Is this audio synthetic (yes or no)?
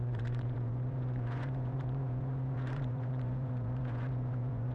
yes